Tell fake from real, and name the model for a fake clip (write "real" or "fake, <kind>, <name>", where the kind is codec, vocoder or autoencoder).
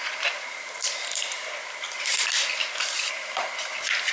fake, vocoder, BigVGAN v2